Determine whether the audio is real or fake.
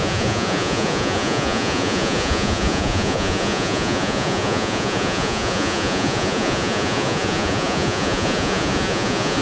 fake